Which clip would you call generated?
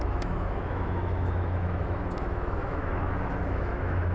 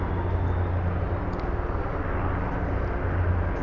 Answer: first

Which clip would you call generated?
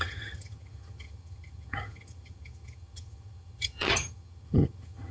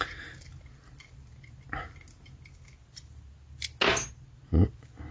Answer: first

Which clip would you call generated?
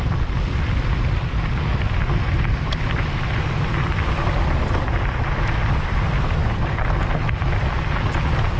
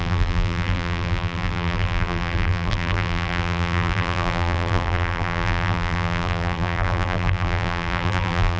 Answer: second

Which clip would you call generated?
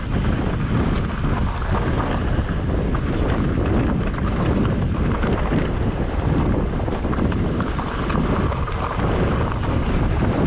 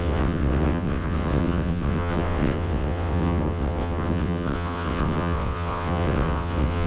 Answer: second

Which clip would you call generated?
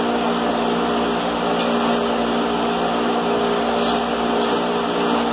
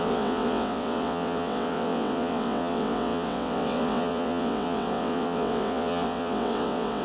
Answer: second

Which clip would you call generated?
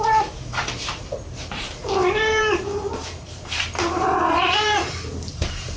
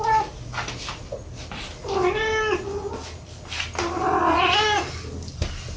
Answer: first